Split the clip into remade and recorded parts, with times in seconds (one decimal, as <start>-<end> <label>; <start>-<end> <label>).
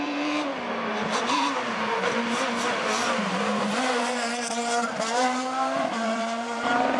0.0-0.5 remade; 0.5-1.2 recorded; 1.2-7.0 remade